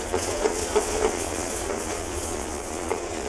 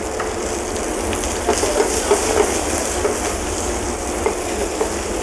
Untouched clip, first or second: second